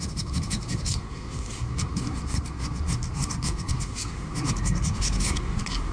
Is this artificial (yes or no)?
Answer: yes